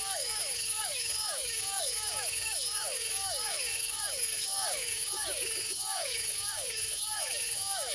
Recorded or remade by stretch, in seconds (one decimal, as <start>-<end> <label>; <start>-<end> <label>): 0.0-7.9 remade